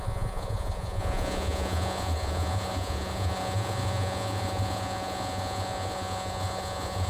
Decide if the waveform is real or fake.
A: fake